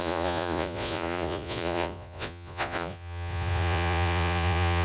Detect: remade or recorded remade